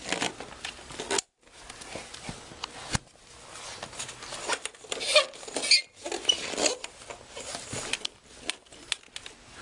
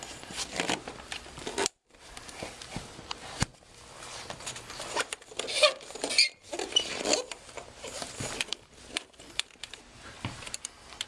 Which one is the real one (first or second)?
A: first